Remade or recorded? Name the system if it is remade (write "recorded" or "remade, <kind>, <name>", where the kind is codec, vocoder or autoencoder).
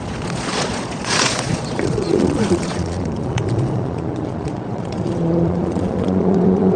remade, vocoder, Vocos